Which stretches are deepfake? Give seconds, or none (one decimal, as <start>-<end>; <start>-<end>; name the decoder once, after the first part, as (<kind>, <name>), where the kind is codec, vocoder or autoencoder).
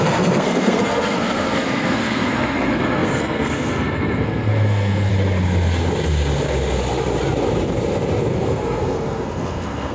0.0-5.1 (codec, SNAC); 8.3-9.9